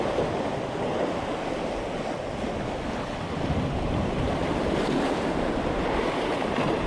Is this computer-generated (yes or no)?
no